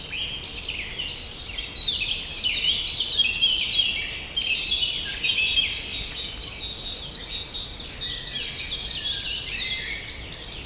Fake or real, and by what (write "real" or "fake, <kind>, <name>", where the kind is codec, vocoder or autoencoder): real